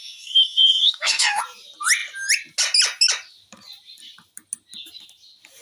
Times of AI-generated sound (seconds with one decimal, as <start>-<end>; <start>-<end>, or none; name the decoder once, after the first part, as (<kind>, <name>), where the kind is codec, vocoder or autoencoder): 0.0-1.4 (codec, DAC)